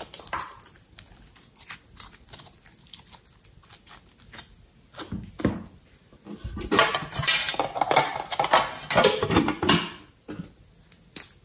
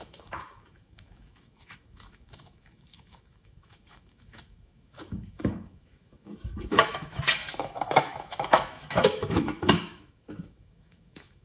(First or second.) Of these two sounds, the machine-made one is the second